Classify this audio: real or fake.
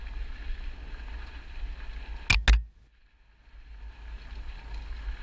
real